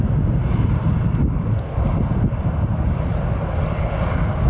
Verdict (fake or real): real